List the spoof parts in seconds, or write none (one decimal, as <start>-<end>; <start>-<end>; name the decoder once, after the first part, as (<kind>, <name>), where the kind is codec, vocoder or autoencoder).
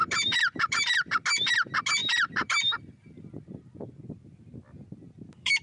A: 0.0-1.1 (vocoder, BigVGAN v2); 2.0-3.8